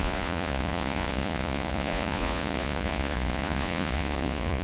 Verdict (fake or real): fake